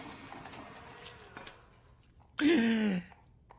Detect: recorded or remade recorded